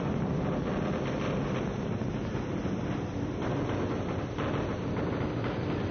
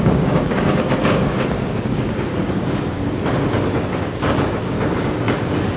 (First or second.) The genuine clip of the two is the first